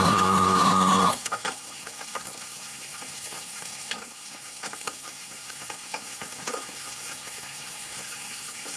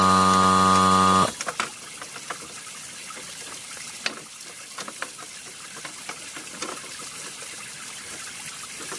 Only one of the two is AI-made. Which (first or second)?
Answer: first